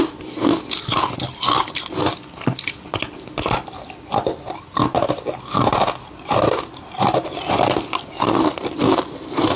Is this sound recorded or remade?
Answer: recorded